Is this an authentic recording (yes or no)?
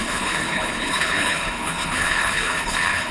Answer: no